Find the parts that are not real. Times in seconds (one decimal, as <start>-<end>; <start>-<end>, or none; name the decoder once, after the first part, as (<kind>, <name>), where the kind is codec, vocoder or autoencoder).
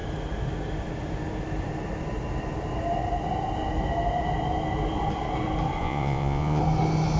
5.8-6.6 (vocoder, Vocos)